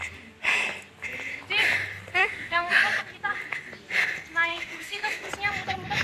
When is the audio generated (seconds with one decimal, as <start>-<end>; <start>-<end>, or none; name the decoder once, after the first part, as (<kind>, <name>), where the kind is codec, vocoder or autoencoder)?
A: 2.2-2.8 (autoencoder, DAC-VAE); 4.5-5.3